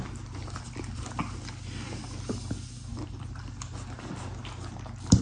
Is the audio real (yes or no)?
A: yes